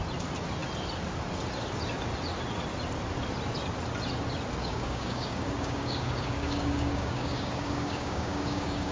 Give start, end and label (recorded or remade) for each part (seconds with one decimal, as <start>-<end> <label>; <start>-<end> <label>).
0.0-4.6 recorded; 4.6-8.9 remade